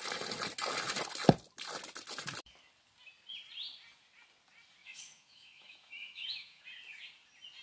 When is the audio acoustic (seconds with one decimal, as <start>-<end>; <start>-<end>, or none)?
0.0-4.8; 6.6-7.6